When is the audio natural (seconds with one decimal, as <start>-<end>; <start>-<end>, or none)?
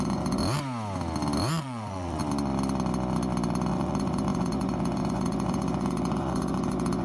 0.4-1.6; 2.2-3.7